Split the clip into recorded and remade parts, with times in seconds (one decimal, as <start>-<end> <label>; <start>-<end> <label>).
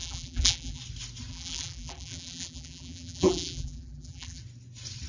0.0-0.8 remade; 0.8-1.3 recorded; 1.3-4.4 remade; 4.4-5.1 recorded